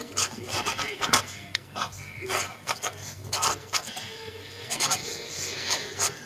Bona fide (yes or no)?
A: no